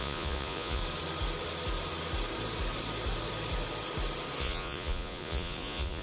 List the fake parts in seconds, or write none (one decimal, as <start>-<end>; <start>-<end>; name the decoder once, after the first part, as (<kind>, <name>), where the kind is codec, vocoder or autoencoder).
0.0-0.8 (vocoder, Vocos); 4.4-6.0